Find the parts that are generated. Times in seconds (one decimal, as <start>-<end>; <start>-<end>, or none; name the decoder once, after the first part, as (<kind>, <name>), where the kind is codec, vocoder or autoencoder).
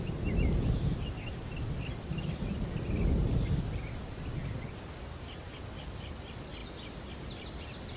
none